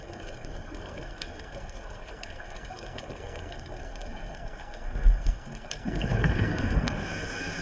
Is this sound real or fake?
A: fake